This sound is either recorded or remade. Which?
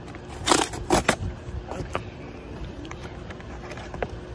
remade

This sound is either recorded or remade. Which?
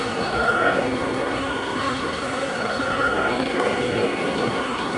remade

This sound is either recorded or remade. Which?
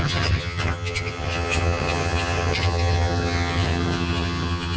remade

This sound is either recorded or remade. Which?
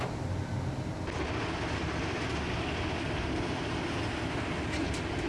recorded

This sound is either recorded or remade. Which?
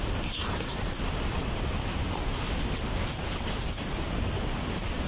recorded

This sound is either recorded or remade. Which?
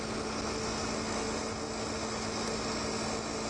recorded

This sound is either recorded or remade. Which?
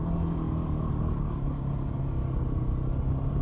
recorded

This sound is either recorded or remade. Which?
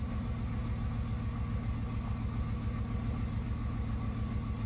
recorded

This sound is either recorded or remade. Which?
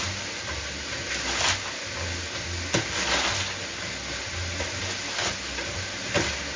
recorded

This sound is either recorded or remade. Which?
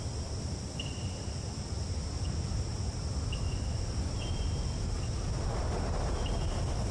recorded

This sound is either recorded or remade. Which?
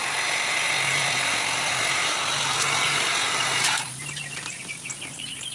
remade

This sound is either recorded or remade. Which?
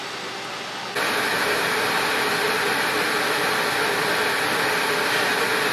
recorded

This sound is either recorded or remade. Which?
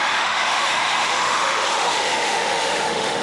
remade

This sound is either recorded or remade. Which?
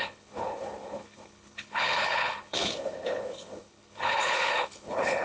remade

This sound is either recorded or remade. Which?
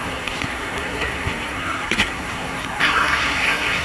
remade